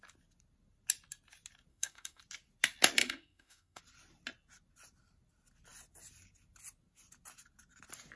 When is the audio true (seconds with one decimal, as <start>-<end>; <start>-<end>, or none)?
0.0-1.7; 2.2-3.0; 3.8-8.2